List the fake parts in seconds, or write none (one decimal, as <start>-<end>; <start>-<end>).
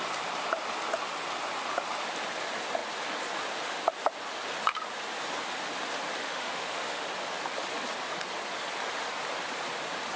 6.2-7.0